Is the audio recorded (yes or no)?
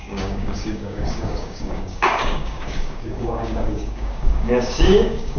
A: no